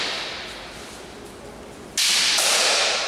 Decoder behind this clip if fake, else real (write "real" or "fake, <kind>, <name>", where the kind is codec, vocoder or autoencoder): real